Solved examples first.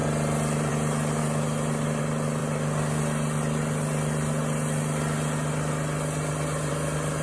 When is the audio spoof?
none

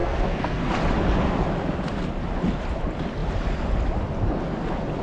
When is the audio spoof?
0.0-0.7 (codec, SNAC)

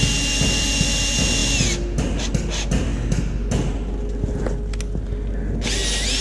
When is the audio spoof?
none